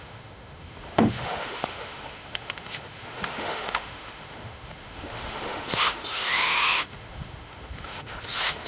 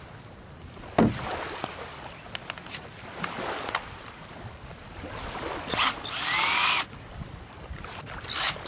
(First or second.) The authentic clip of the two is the second